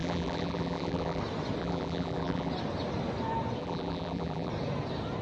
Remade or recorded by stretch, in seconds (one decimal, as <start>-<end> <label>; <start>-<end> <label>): 0.0-1.2 remade; 1.2-1.6 recorded; 1.6-2.5 remade; 2.5-3.6 recorded; 3.6-4.5 remade; 4.5-5.2 recorded